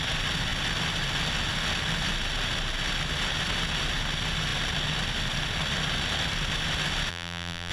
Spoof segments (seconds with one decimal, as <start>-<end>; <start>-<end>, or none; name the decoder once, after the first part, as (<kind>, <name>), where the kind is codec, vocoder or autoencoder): 7.1-7.7 (vocoder, BigVGAN v2)